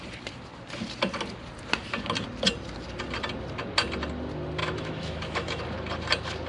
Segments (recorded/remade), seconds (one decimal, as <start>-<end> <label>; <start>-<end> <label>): 0.0-4.6 recorded; 4.6-5.6 remade; 5.6-6.5 recorded